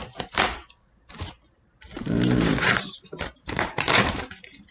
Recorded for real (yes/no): no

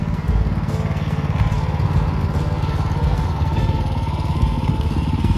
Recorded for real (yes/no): no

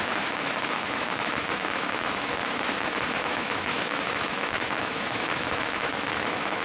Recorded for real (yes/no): no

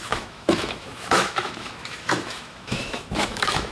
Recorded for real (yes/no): no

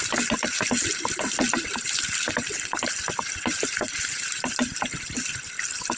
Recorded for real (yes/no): yes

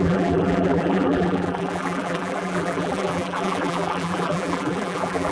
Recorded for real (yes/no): no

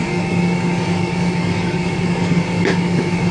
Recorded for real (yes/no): no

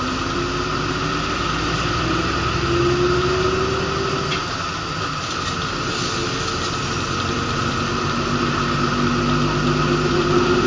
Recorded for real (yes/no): yes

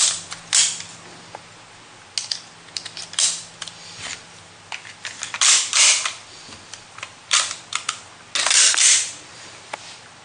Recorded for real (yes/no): yes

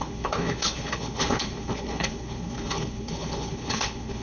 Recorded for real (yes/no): no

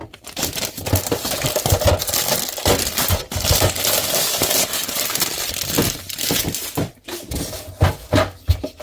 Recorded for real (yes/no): yes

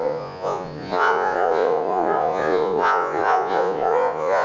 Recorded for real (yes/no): no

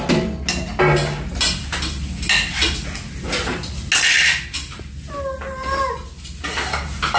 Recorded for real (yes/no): yes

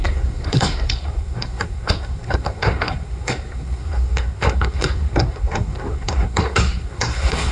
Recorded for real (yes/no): no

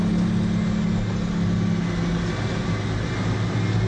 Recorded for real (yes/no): yes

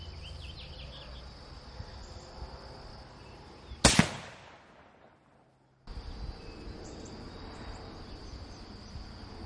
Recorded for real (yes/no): yes